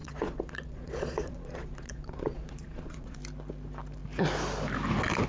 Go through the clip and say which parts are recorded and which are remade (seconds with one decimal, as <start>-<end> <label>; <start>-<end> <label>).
0.0-3.2 remade; 3.2-5.3 recorded